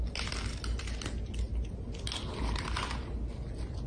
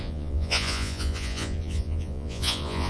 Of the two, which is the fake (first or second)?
second